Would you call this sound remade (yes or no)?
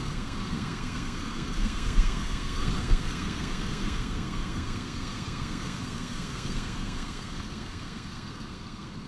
yes